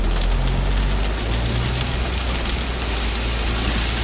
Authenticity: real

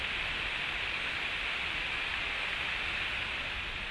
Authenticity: real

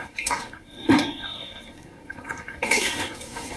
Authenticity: fake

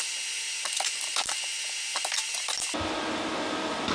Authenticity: real